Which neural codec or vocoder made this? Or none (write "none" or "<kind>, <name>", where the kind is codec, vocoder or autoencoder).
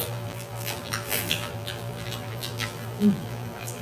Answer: vocoder, BigVGAN v2